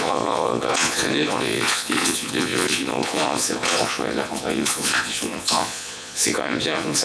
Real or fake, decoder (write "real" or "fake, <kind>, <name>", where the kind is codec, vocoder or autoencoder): fake, vocoder, Vocos